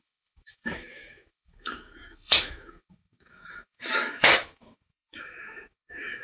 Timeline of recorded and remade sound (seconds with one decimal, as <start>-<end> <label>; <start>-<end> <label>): 0.0-6.2 remade